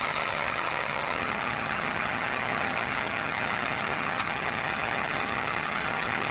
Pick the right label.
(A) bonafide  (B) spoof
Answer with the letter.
B